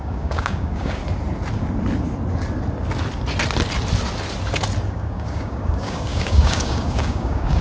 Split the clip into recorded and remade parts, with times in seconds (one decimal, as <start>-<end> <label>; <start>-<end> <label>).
0.0-1.0 remade; 1.0-4.9 recorded; 4.9-7.6 remade